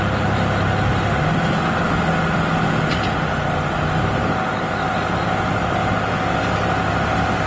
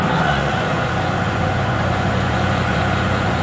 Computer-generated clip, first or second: second